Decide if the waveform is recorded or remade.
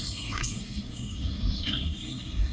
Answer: remade